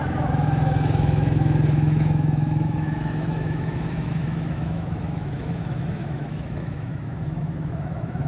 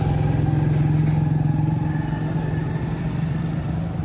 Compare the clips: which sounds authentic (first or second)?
second